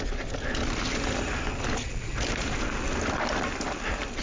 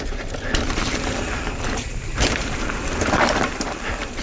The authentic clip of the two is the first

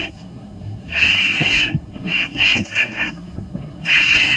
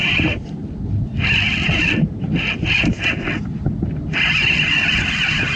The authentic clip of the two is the second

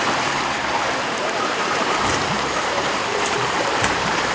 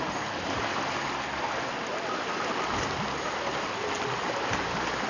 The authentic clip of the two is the second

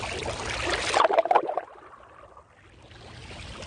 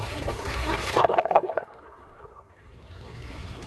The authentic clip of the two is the first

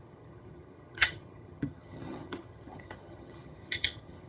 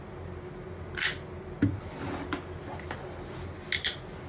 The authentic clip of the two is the second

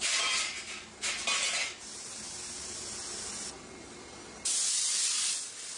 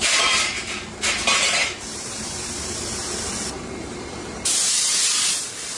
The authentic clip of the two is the first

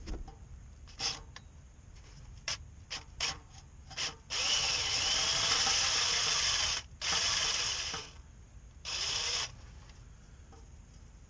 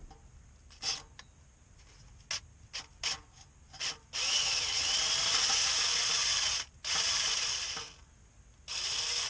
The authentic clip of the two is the second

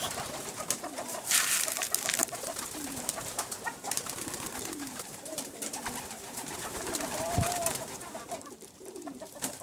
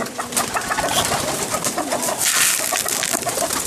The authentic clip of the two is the second